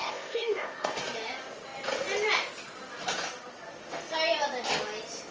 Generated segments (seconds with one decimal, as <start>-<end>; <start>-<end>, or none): 0.0-1.0